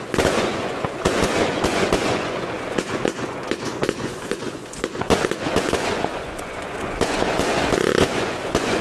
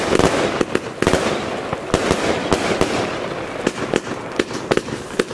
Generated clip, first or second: first